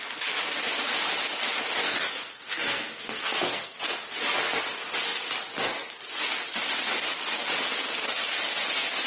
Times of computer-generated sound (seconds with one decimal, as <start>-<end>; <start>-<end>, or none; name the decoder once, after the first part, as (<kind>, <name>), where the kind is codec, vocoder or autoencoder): 1.8-3.9 (codec, SNAC)